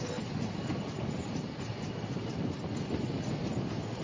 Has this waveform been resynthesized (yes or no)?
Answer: no